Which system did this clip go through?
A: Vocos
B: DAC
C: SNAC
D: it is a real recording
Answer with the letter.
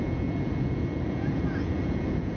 A